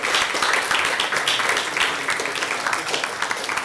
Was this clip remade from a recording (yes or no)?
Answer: no